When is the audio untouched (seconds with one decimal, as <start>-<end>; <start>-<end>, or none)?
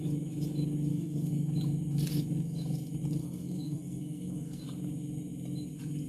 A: 0.0-0.9; 1.5-3.2; 4.6-6.1